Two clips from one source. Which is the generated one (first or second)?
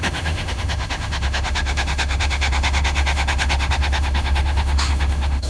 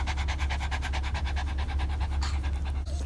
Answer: first